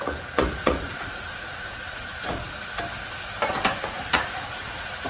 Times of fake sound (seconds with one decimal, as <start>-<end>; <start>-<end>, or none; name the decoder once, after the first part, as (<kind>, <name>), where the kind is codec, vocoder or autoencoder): 0.0-2.4 (vocoder, Vocos); 3.8-5.1